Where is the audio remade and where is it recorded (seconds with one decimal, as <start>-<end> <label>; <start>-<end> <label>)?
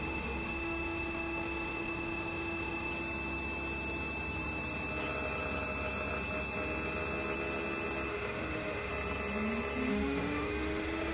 0.0-2.9 remade; 2.9-8.1 recorded; 8.1-8.9 remade; 8.9-9.9 recorded; 9.9-11.1 remade